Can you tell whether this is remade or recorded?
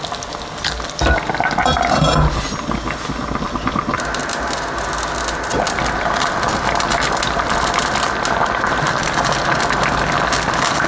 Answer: recorded